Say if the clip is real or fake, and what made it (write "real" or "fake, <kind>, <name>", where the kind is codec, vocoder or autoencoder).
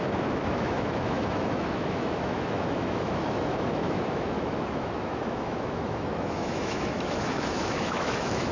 fake, autoencoder, DAC-VAE